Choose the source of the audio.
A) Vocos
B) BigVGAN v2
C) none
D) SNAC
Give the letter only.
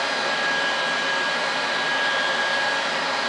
B